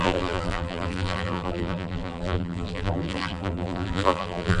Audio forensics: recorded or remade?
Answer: remade